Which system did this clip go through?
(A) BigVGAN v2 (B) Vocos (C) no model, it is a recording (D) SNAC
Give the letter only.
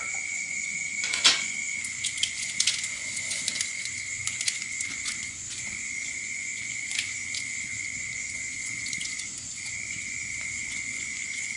B